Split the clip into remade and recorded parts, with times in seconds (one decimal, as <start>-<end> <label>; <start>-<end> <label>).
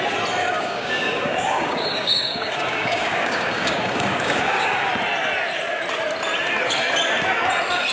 0.0-0.4 recorded; 0.4-4.9 remade; 4.9-7.9 recorded